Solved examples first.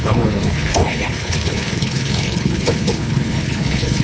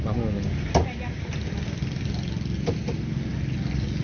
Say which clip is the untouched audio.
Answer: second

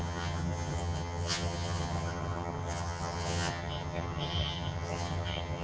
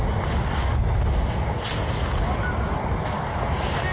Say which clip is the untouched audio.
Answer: second